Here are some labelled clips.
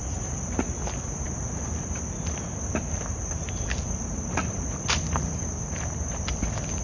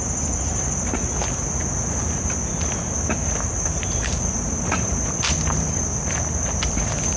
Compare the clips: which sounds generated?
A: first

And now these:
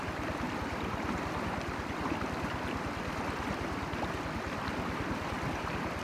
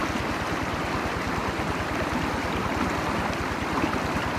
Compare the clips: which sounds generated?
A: first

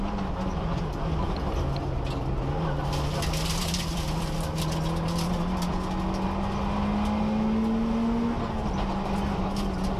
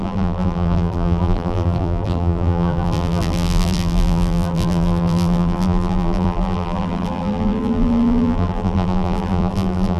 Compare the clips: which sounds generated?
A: second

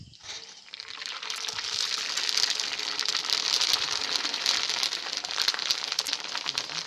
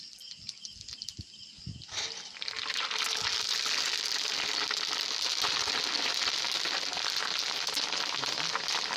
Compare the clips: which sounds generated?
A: first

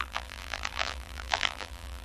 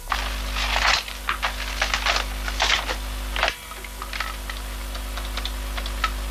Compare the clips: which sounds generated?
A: first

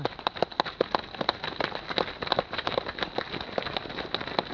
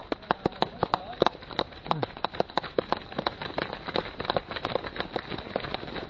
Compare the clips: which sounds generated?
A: second